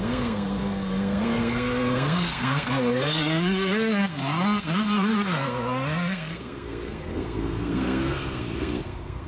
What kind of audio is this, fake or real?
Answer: fake